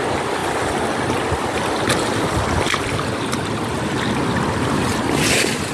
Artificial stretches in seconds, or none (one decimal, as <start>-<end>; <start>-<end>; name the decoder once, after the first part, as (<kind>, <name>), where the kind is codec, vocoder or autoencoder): none

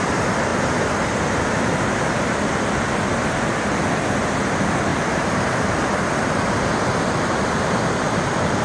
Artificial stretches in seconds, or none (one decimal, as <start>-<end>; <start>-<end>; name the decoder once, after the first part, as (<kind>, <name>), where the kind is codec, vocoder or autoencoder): 4.9-5.7 (vocoder, BigVGAN v2)

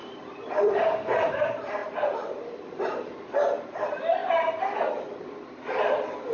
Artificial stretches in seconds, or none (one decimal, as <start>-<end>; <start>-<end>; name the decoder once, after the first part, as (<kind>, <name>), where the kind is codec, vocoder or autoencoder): 0.0-1.3 (vocoder, BigVGAN v2)

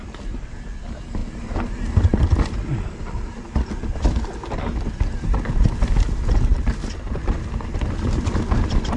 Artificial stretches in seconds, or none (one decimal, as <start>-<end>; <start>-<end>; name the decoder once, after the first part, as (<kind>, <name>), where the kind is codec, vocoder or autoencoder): none

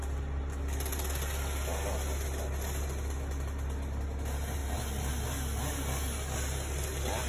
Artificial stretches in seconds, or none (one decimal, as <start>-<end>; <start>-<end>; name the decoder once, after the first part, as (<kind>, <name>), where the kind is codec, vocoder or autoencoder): 4.6-5.1 (vocoder, BigVGAN v2)

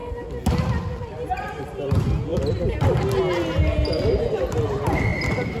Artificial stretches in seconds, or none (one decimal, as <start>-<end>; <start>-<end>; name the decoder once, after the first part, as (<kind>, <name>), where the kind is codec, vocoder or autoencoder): 5.1-5.6 (vocoder, BigVGAN v2)

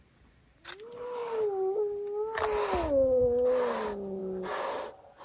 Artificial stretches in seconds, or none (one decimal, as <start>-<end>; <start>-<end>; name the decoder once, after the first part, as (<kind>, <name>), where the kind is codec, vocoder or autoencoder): none